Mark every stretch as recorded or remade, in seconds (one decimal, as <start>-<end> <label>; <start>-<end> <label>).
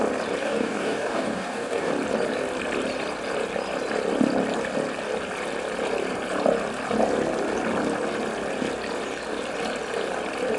0.0-0.4 recorded; 0.4-1.9 remade; 1.9-10.6 recorded